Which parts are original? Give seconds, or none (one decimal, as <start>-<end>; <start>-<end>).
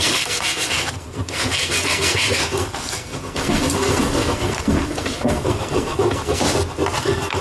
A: 6.4-7.0